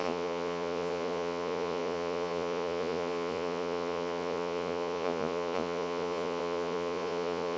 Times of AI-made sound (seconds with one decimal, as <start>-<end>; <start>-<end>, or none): 0.0-7.6